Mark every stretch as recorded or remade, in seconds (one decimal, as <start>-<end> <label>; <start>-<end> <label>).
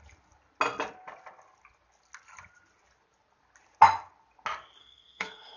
0.0-4.8 recorded; 4.8-5.6 remade